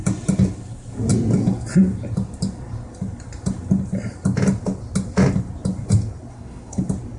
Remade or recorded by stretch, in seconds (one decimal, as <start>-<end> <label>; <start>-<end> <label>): 0.0-6.3 recorded; 6.3-6.8 remade; 6.8-7.2 recorded